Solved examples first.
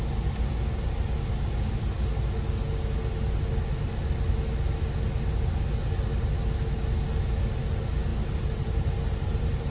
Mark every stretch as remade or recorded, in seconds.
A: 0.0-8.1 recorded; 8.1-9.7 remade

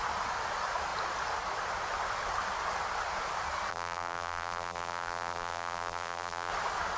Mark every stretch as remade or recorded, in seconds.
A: 0.0-3.7 recorded; 3.7-6.5 remade; 6.5-7.0 recorded

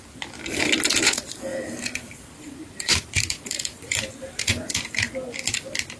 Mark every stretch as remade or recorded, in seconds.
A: 0.0-1.5 recorded; 1.5-5.1 remade; 5.1-6.0 recorded

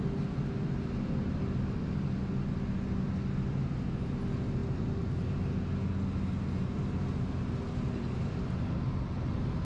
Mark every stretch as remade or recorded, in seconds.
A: 0.0-9.6 recorded

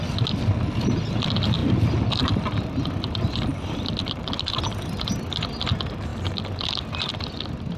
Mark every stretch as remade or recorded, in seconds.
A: 0.0-1.6 recorded; 1.6-5.1 remade; 5.1-6.1 recorded; 6.1-7.1 remade; 7.1-7.8 recorded

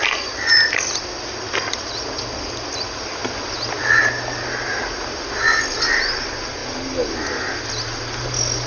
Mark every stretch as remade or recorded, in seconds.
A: 0.0-8.7 recorded